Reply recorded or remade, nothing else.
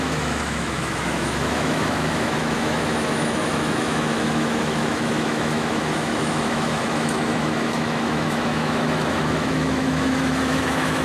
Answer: remade